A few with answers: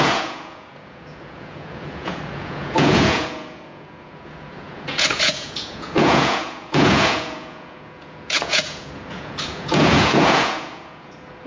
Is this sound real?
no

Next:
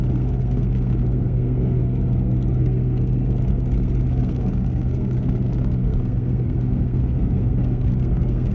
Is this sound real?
no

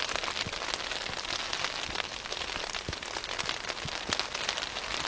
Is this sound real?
yes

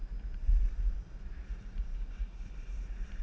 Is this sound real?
no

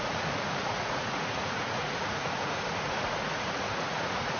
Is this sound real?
no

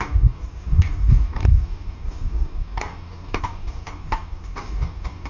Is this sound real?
no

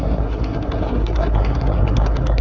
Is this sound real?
no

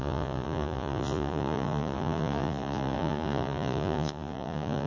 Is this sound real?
no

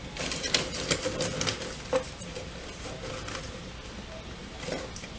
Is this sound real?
yes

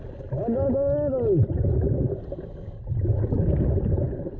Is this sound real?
yes